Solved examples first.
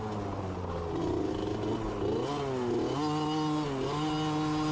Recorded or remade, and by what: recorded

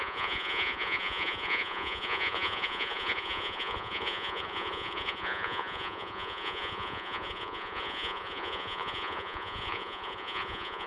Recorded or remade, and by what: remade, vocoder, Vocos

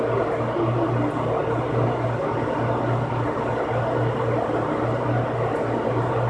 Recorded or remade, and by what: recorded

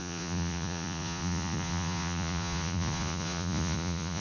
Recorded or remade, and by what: remade, vocoder, Vocos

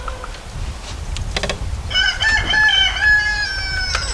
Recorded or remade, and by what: recorded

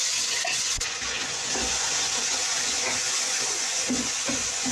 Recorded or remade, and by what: remade, vocoder, Vocos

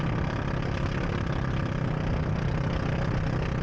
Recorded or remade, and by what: recorded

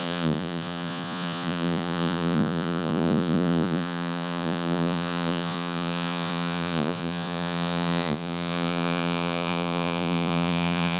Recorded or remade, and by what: remade, vocoder, Vocos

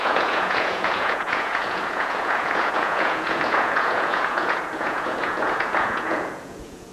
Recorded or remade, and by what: remade, vocoder, Vocos